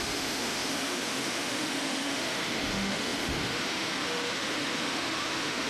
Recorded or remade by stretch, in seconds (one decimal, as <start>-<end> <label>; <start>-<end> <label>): 0.0-5.7 remade